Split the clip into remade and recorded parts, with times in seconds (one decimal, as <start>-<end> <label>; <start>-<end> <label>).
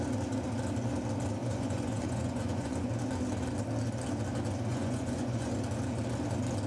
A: 0.0-1.4 recorded; 1.4-2.9 remade; 2.9-4.7 recorded; 4.7-5.5 remade; 5.5-6.7 recorded